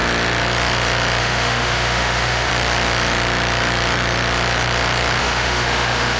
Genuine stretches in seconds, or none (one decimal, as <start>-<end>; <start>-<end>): 0.0-1.2; 2.5-5.2